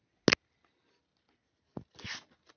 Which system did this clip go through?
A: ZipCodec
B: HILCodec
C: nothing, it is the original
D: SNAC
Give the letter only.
C